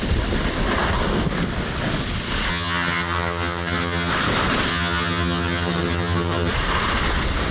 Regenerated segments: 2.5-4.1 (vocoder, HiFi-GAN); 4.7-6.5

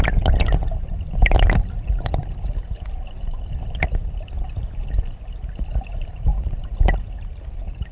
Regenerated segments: none